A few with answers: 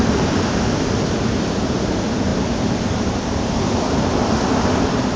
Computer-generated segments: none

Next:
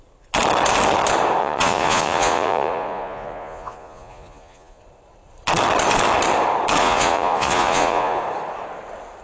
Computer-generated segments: 1.4-4.8 (vocoder, Vocos); 6.8-8.2

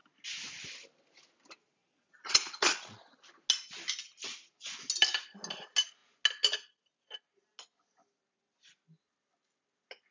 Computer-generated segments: 1.8-3.2 (vocoder, Vocos)

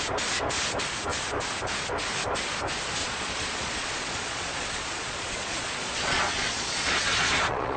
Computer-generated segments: 3.0-7.8 (vocoder, Vocos)

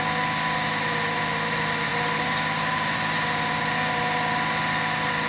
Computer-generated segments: none

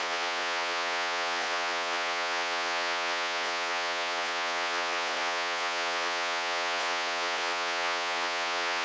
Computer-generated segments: 0.0-8.8 (vocoder, Vocos)

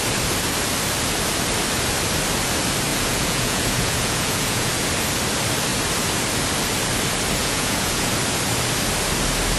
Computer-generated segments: 2.9-4.7 (vocoder, Vocos); 7.4-8.1